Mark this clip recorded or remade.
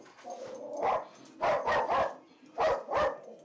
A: recorded